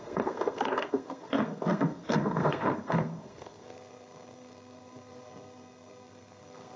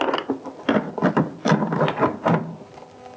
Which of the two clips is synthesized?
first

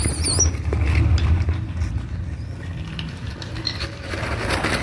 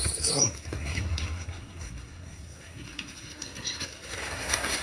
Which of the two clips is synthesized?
second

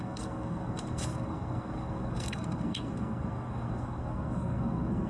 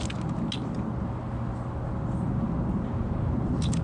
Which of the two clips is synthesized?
first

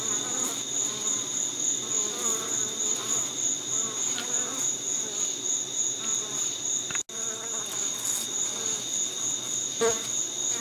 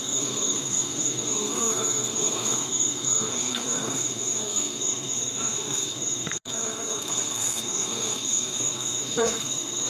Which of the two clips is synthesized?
second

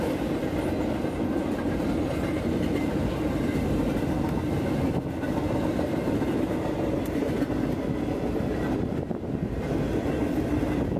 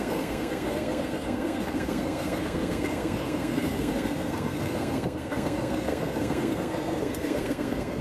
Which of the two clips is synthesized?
second